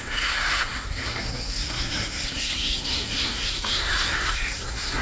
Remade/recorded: remade